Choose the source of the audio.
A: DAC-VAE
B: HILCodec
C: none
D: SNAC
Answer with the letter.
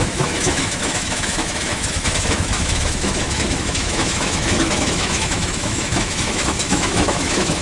A